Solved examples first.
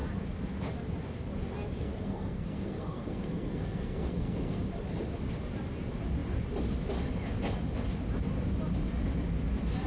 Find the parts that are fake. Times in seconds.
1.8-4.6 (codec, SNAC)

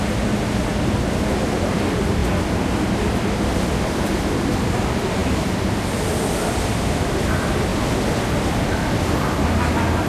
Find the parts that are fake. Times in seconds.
none